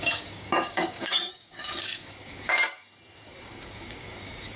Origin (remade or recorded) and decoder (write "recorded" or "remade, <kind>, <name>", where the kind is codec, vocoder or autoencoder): remade, codec, DAC